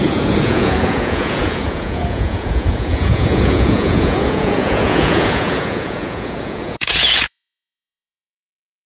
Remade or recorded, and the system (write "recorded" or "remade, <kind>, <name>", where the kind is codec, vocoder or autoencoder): remade, vocoder, Vocos